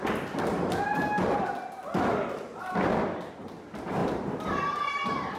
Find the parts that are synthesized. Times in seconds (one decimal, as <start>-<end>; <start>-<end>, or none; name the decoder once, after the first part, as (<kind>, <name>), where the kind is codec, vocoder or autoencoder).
0.9-1.5 (vocoder, BigVGAN v2); 4.0-5.4

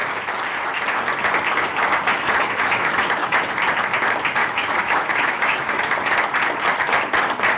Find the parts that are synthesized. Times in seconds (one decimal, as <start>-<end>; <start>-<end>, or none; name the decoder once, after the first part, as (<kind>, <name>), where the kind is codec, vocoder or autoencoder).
2.1-3.5 (autoencoder, DAC-VAE); 4.4-5.8

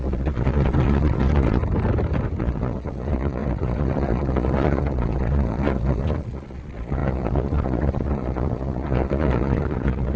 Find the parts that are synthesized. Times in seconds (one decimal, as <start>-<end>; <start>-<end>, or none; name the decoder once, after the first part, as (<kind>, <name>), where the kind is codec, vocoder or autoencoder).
0.0-1.6 (vocoder, Vocos); 2.4-10.2

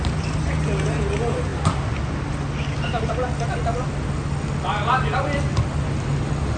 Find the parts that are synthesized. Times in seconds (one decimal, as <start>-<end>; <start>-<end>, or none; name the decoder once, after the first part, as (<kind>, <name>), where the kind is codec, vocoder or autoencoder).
none